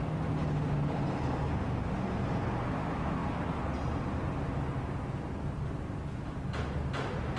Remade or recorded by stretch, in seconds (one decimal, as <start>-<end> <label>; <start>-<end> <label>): 0.0-7.4 recorded